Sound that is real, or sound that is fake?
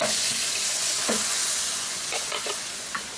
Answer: fake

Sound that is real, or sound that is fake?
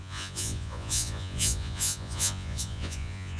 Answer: fake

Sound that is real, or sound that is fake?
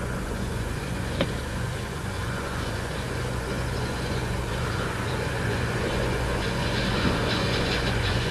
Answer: fake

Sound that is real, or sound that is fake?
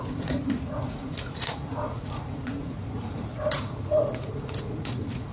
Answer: fake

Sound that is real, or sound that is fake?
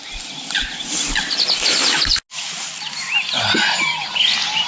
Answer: real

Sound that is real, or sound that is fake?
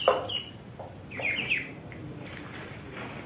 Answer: real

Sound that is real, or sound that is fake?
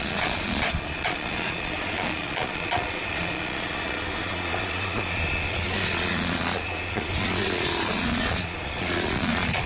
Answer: fake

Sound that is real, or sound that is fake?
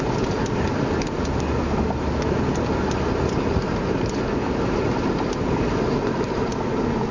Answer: real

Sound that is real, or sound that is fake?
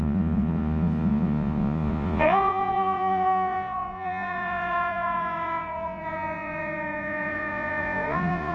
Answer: fake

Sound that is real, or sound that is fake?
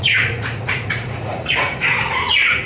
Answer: fake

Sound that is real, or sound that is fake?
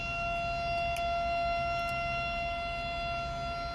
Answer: real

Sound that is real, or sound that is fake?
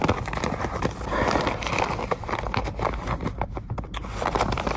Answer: real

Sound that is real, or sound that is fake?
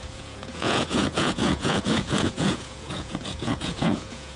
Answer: fake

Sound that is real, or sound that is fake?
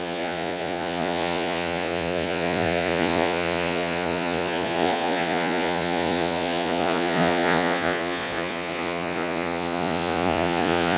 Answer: fake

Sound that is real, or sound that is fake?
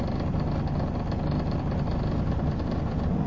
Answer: real